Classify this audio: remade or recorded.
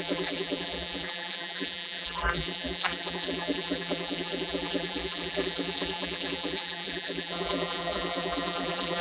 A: remade